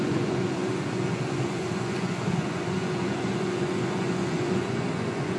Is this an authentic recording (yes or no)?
no